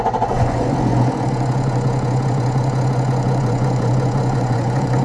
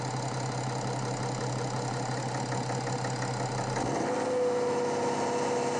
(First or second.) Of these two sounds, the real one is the second